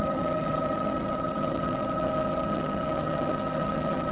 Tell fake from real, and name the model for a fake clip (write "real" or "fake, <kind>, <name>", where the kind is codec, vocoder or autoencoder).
fake, vocoder, HiFi-GAN